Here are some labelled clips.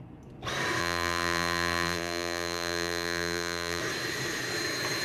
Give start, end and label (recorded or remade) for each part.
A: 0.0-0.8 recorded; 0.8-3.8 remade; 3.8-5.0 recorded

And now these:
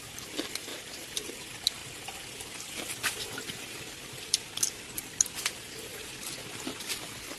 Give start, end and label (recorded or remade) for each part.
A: 0.0-0.7 recorded; 0.7-1.3 remade; 1.3-7.4 recorded

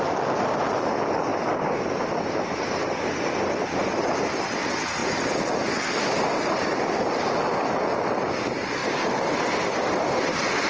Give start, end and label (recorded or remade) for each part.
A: 0.0-1.3 recorded; 1.3-3.0 remade; 3.0-10.7 recorded

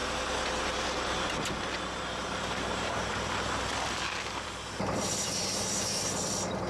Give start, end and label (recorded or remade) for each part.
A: 0.0-2.2 recorded; 2.2-6.7 remade

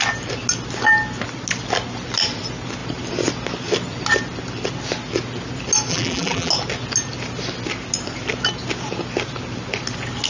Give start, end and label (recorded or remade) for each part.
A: 0.0-5.9 recorded; 5.9-6.5 remade; 6.5-10.3 recorded

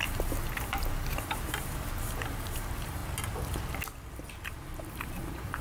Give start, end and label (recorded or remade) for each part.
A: 0.0-3.0 remade; 3.0-4.9 recorded; 4.9-5.6 remade

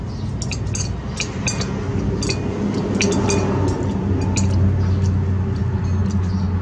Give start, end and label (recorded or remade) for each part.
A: 0.0-6.6 recorded

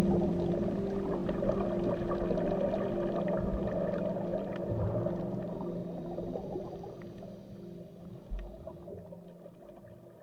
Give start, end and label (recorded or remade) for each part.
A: 0.0-5.8 recorded; 5.8-7.0 remade; 7.0-10.2 recorded